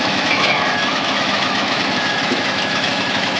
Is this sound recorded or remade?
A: remade